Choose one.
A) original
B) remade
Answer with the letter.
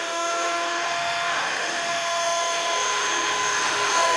B